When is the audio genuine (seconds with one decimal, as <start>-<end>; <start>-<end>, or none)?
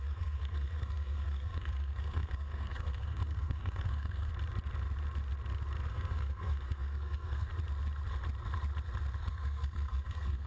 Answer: 4.3-5.9; 7.5-9.3